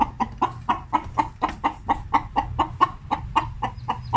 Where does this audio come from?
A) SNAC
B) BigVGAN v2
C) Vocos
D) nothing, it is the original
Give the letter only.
D